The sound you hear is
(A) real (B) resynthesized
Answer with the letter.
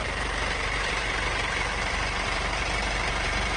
B